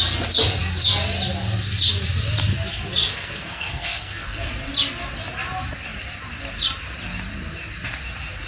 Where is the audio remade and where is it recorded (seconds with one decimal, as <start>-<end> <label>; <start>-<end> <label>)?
0.0-3.0 recorded; 3.0-4.5 remade; 4.5-8.5 recorded